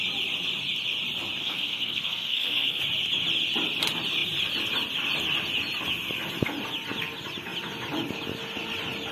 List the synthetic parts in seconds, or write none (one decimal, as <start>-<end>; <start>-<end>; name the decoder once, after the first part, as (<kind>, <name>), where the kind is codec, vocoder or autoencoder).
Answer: 1.4-2.8 (codec, SNAC)